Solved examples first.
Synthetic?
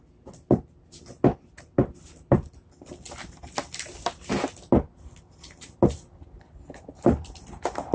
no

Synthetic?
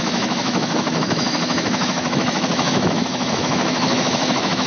yes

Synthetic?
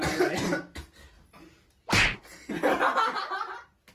no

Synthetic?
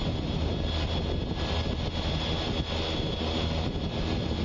no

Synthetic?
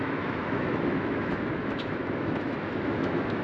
yes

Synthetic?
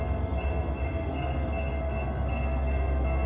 yes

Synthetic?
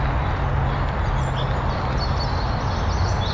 no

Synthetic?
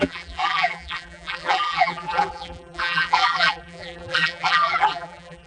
yes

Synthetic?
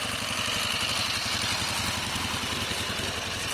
no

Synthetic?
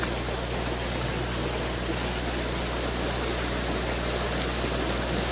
no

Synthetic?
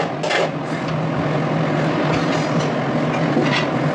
no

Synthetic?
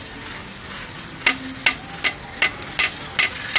no